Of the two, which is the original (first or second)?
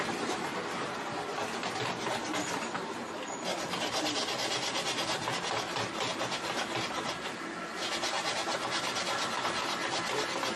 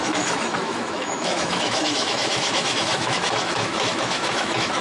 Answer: first